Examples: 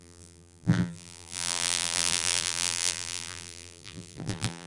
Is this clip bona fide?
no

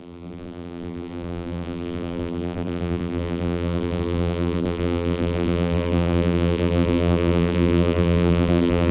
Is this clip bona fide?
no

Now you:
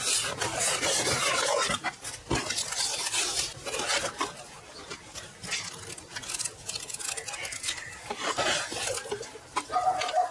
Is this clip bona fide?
yes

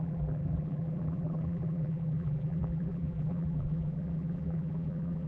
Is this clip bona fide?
no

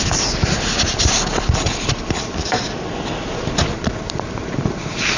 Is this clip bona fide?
no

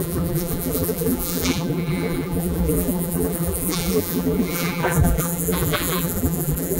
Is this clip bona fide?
no